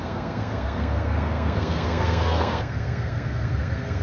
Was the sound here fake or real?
fake